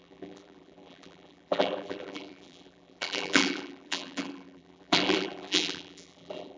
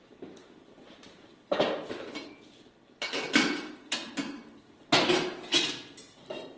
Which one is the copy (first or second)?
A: first